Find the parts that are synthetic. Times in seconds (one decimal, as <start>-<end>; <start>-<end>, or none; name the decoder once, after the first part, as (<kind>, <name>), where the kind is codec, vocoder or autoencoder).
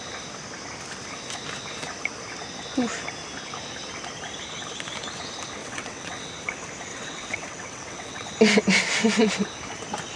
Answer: 5.6-6.3 (vocoder, WaveNeXt); 6.9-8.3